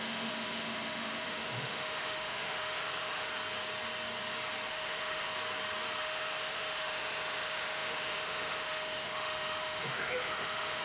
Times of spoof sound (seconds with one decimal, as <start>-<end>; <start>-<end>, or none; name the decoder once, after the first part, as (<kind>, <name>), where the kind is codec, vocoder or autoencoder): 0.0-3.3 (autoencoder, DAC-VAE); 4.7-5.3; 6.0-10.8